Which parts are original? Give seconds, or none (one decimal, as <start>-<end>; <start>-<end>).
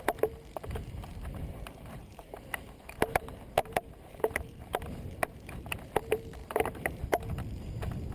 0.0-1.1; 2.3-3.6; 5.5-6.4; 7.0-8.1